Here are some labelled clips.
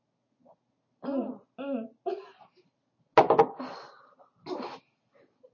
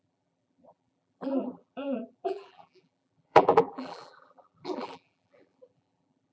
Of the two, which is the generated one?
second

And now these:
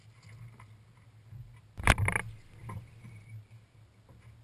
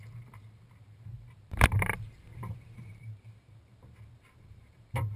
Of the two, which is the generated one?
second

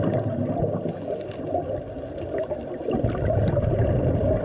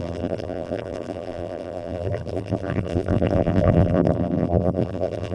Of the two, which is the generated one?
second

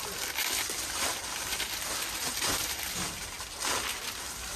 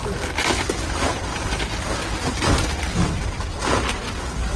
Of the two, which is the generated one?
first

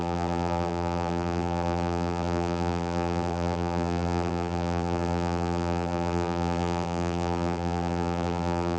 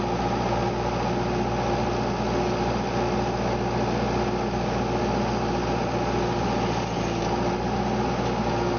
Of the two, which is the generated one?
first